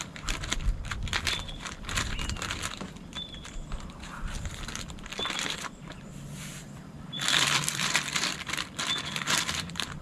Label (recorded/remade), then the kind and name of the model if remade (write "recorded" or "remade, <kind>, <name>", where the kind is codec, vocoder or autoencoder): remade, vocoder, BigVGAN v2